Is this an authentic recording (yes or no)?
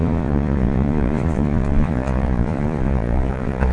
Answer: no